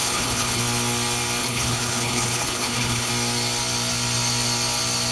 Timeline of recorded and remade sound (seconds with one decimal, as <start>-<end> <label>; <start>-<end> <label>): 0.0-0.6 remade; 0.6-1.4 recorded; 1.4-3.1 remade; 3.1-5.1 recorded